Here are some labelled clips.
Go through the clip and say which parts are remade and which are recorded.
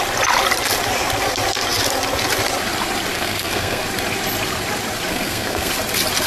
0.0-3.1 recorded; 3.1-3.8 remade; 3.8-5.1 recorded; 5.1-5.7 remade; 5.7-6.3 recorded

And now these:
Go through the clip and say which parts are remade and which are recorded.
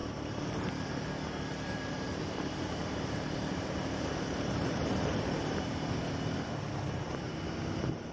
0.0-0.7 remade; 0.7-1.5 recorded; 1.5-6.0 remade; 6.0-8.1 recorded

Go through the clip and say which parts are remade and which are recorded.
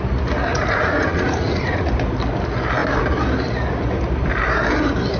0.0-0.5 recorded; 0.5-1.9 remade; 1.9-5.2 recorded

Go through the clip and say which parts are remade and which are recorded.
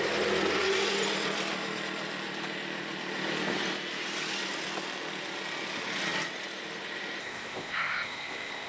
0.0-7.2 recorded; 7.2-8.7 remade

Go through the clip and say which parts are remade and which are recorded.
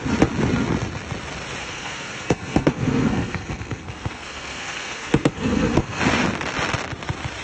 0.0-1.6 recorded; 1.6-6.0 remade; 6.0-7.4 recorded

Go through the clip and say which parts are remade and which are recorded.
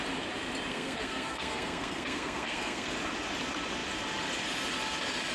0.0-0.7 recorded; 0.7-2.9 remade; 2.9-5.3 recorded